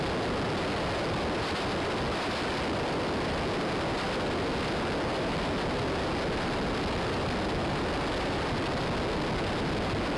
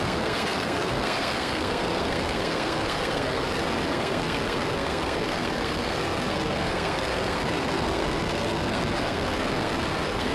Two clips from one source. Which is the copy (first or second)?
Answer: second